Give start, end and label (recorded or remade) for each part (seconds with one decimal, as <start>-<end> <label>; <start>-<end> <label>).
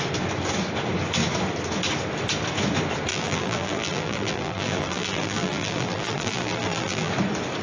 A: 0.0-3.1 recorded; 3.1-7.1 remade; 7.1-7.6 recorded